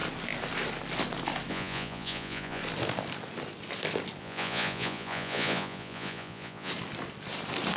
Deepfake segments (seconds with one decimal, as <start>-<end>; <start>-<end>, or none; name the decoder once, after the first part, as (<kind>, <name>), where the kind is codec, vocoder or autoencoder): 1.5-2.6 (vocoder, Vocos); 4.2-6.7